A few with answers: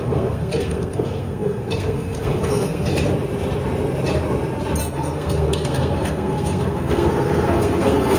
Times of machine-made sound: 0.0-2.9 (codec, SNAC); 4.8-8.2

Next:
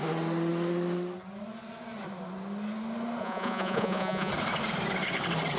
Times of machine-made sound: 3.2-4.3 (vocoder, Vocos)

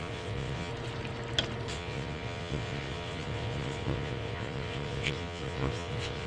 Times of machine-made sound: 0.0-0.7 (vocoder, WaveNeXt); 1.7-6.3

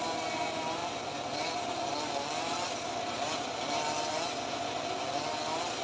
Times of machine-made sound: none

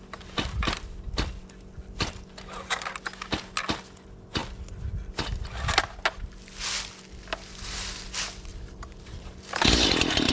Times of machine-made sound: 8.5-10.3 (vocoder, BigVGAN v2)

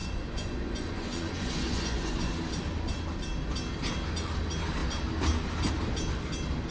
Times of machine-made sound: 0.0-2.3 (vocoder, Vocos)

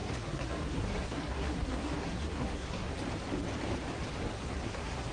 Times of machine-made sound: 0.0-2.9 (codec, SNAC); 4.2-5.1

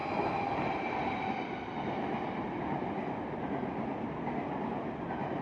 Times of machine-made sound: none